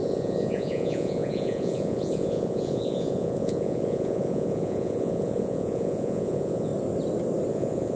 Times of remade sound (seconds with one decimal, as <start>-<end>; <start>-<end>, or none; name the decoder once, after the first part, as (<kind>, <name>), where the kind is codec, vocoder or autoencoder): 0.0-6.7 (vocoder, Vocos); 7.5-8.0